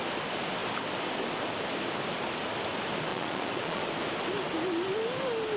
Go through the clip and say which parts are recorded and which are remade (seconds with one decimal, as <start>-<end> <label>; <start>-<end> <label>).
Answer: 0.0-3.1 recorded; 3.1-3.8 remade; 3.8-5.6 recorded